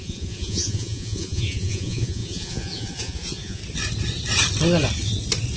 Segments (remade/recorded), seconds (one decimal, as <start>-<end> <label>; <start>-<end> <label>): 0.0-3.6 remade; 3.6-5.6 recorded